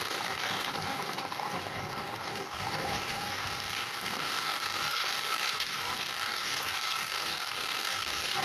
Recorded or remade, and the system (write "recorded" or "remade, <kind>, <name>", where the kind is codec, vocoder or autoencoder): remade, codec, DAC